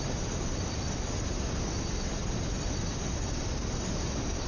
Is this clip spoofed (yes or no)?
no